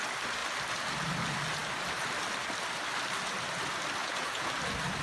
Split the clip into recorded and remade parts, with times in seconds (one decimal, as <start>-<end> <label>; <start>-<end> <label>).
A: 0.0-4.0 recorded; 4.0-4.5 remade; 4.5-5.0 recorded